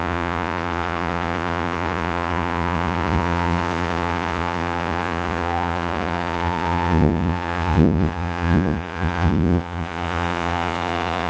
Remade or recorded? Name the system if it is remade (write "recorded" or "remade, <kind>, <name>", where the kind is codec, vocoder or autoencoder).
remade, vocoder, Vocos